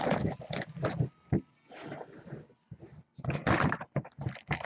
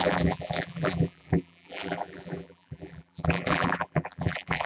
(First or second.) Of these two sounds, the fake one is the second